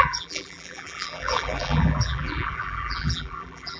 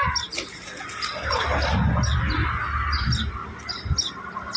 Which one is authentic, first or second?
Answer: second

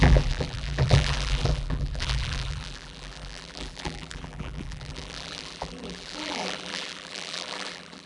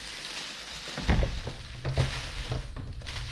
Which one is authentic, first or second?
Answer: second